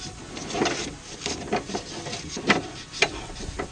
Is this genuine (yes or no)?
yes